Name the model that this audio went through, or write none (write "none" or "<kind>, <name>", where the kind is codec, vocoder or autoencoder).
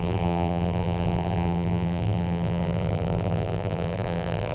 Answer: vocoder, BigVGAN v2